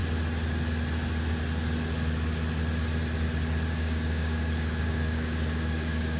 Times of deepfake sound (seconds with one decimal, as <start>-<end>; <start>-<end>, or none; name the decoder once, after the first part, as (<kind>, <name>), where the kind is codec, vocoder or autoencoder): 3.7-6.2 (codec, DAC)